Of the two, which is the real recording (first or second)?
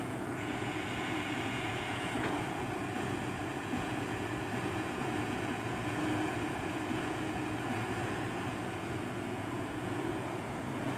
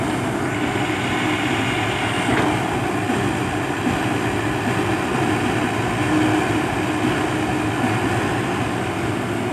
second